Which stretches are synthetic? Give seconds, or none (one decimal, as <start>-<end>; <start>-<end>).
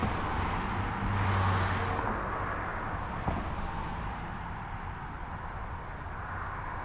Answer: 2.7-5.3